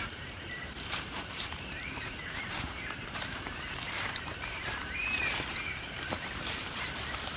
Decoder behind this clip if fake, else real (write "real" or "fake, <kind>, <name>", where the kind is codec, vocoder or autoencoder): fake, vocoder, BigVGAN v2